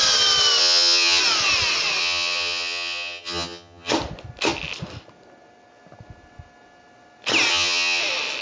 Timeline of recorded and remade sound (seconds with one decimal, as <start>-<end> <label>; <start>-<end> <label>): 0.0-0.6 recorded; 0.6-1.2 remade; 1.2-2.0 recorded; 2.0-3.9 remade; 3.9-7.5 recorded; 7.5-8.0 remade; 8.0-8.4 recorded